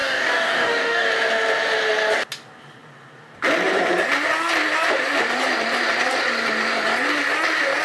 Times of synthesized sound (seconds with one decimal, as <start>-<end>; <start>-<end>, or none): 0.0-1.1